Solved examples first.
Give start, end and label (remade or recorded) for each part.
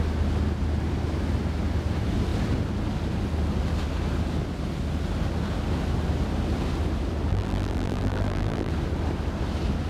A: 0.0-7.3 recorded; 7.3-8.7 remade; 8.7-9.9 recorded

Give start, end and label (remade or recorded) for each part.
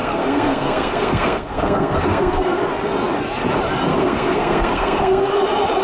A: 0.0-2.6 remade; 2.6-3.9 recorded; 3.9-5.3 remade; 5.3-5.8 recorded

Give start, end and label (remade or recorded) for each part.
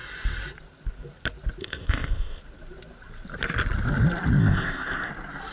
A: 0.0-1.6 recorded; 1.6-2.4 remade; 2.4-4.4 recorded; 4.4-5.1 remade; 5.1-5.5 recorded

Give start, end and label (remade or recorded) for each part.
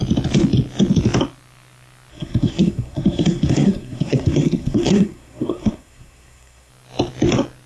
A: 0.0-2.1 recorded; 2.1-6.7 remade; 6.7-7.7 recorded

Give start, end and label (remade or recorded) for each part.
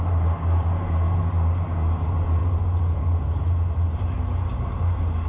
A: 0.0-5.3 recorded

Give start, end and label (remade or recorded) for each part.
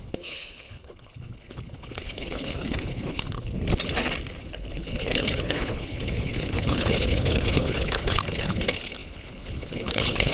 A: 0.0-3.6 remade; 3.6-4.4 recorded; 4.4-10.3 remade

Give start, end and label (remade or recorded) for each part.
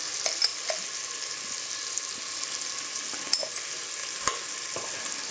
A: 0.0-5.3 recorded